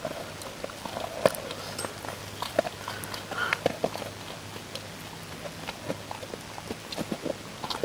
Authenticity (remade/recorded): recorded